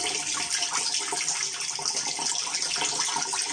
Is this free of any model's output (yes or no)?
yes